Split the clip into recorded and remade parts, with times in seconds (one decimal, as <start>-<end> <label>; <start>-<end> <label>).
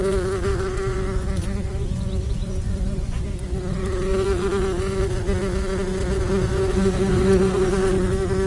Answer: 0.0-8.5 remade